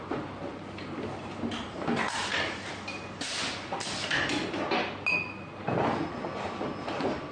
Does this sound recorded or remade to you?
recorded